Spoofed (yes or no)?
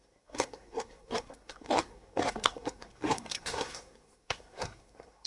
yes